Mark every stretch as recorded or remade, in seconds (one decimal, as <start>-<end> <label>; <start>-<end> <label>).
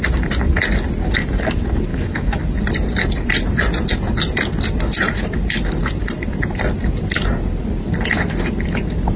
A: 0.0-1.9 recorded; 1.9-2.4 remade; 2.4-9.2 recorded